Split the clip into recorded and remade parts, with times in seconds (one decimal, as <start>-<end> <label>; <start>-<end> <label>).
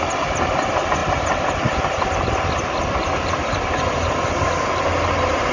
0.0-1.0 recorded; 1.0-4.3 remade; 4.3-5.5 recorded